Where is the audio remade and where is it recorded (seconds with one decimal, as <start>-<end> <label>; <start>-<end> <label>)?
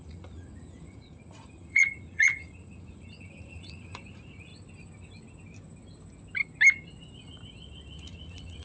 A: 0.0-4.5 remade; 4.5-8.0 recorded; 8.0-8.6 remade